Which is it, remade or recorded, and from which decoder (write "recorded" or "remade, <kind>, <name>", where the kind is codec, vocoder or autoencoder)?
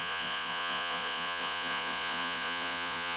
remade, vocoder, Vocos